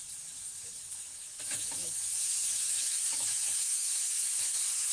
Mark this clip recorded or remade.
remade